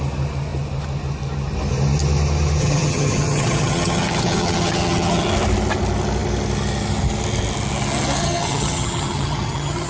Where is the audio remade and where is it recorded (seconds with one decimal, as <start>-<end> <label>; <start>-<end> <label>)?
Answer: 0.0-2.6 recorded; 2.6-5.3 remade; 5.3-8.2 recorded; 8.2-9.9 remade